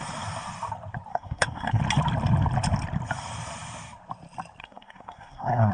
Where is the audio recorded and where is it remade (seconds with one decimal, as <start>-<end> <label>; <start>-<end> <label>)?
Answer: 0.0-1.1 recorded; 1.1-1.8 remade; 1.8-4.6 recorded; 4.6-5.7 remade